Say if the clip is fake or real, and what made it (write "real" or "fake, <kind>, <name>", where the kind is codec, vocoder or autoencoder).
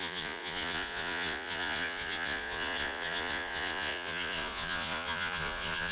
fake, vocoder, Vocos